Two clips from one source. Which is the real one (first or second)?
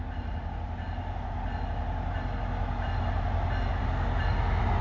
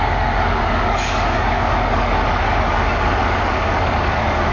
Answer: first